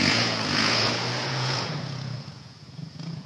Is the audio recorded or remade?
remade